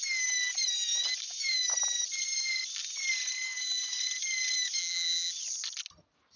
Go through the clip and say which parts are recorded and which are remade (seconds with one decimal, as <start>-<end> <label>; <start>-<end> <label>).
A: 0.0-4.8 recorded; 4.8-5.3 remade; 5.3-6.4 recorded